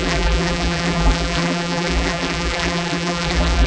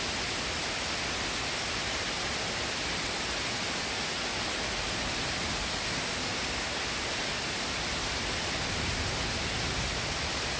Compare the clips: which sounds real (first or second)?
second